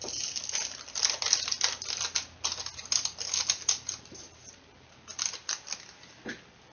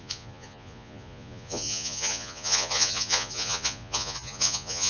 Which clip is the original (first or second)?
first